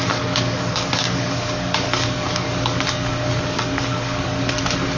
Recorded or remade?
remade